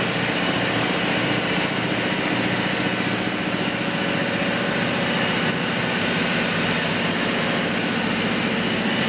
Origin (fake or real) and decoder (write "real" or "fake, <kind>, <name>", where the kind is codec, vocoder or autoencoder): real